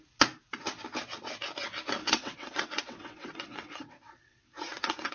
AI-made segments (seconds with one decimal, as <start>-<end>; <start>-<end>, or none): 2.0-5.1